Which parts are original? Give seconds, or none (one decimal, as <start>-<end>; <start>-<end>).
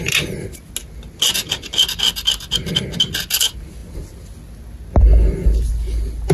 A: 0.0-6.3